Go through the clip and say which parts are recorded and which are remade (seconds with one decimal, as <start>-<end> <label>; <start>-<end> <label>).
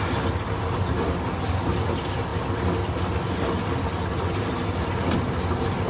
0.0-5.9 recorded